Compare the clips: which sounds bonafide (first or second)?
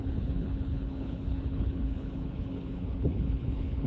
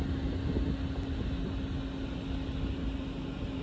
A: second